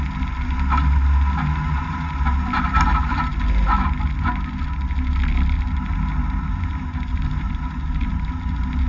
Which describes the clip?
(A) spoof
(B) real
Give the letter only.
B